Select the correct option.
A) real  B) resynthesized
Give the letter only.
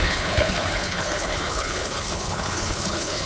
B